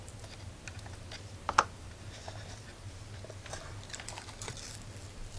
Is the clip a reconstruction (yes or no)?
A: no